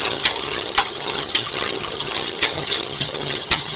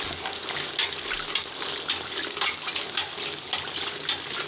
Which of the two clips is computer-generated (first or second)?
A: first